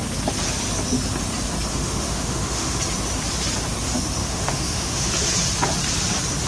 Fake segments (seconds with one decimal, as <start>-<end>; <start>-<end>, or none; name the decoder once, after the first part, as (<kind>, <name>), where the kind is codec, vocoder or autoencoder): 1.7-2.8 (autoencoder, DAC-VAE); 4.2-5.1